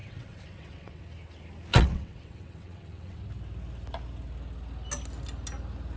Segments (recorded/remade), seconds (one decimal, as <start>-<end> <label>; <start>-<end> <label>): 0.0-1.0 remade; 1.0-1.7 recorded; 1.7-3.2 remade; 3.2-6.0 recorded